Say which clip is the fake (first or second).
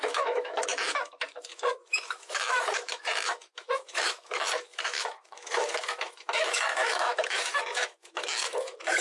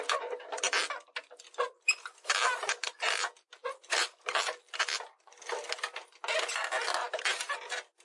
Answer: first